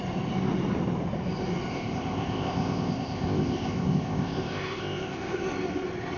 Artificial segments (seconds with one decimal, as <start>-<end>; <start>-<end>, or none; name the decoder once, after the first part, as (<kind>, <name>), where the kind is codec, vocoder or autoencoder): 1.7-5.4 (codec, ZipCodec)